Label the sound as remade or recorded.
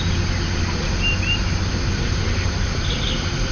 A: recorded